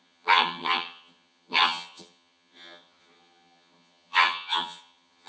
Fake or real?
fake